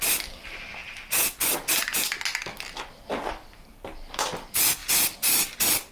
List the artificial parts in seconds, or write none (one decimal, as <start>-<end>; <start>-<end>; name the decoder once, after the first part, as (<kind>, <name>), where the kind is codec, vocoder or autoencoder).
none